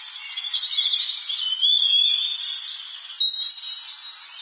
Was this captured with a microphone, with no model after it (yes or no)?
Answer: yes